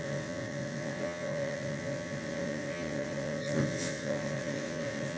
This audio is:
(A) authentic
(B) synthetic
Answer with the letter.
B